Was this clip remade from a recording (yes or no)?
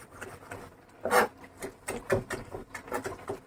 no